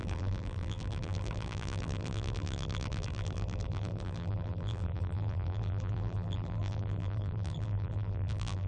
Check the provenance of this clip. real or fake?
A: fake